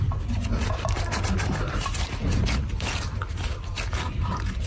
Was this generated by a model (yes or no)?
no